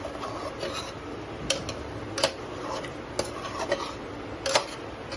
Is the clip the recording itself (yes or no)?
yes